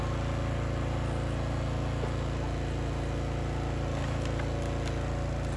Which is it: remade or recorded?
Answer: recorded